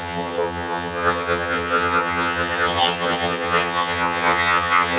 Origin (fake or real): fake